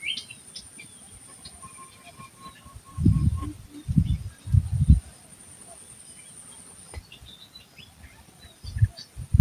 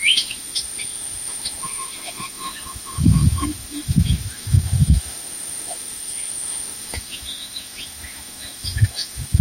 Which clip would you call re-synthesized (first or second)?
second